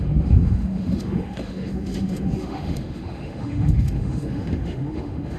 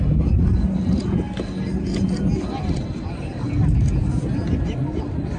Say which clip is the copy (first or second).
first